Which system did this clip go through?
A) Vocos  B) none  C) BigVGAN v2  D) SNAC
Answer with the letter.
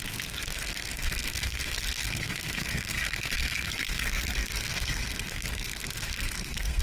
D